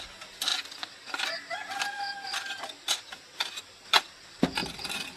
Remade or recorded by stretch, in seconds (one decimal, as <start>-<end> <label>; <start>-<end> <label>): 0.0-5.2 recorded